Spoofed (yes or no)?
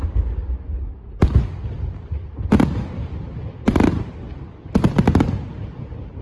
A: no